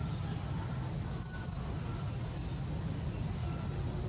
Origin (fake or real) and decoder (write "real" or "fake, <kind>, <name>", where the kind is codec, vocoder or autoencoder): real